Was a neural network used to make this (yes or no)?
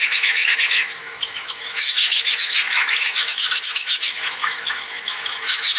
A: yes